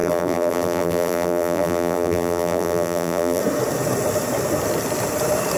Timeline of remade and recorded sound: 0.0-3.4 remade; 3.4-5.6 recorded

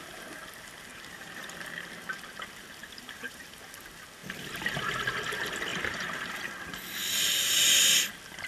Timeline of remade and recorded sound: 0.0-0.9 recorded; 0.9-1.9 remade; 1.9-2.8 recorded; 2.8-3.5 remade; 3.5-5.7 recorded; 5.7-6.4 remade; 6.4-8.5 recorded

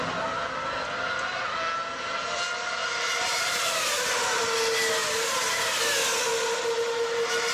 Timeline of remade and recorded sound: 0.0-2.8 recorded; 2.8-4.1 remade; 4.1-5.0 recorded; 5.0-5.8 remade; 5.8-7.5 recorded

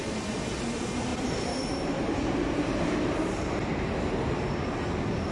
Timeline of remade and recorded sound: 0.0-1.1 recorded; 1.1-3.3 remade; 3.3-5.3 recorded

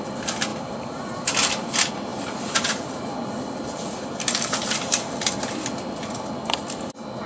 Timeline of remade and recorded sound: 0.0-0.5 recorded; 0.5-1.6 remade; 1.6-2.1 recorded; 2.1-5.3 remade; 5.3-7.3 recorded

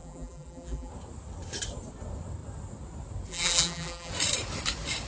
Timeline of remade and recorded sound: 0.0-0.9 remade; 0.9-3.3 recorded; 3.3-4.1 remade; 4.1-5.1 recorded

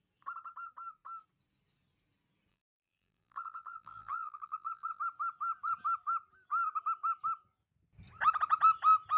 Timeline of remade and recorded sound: 0.0-2.5 recorded; 2.5-5.0 remade; 5.0-9.2 recorded

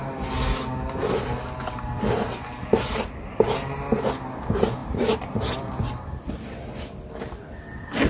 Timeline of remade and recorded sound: 0.0-4.8 recorded; 4.8-6.8 remade; 6.8-8.1 recorded